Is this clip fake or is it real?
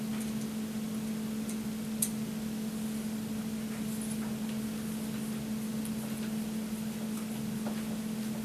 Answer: real